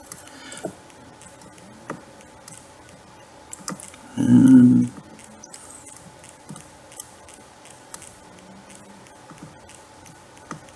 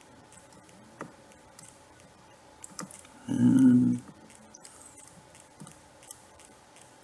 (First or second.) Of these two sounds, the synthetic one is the second